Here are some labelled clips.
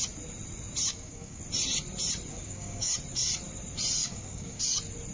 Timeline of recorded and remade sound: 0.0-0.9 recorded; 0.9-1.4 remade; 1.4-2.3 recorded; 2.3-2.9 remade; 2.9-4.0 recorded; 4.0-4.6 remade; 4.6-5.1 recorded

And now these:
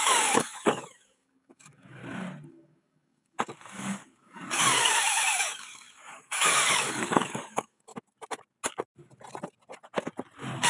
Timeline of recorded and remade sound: 0.0-2.0 remade; 2.0-2.5 recorded; 2.5-7.9 remade; 7.9-10.7 recorded

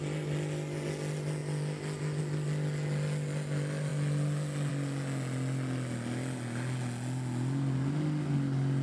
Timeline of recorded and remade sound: 0.0-8.8 recorded